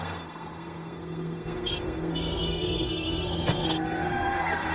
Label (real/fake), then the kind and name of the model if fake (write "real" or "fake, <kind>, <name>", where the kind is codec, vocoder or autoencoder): fake, codec, SNAC